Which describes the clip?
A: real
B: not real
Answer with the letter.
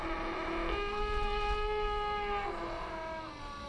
A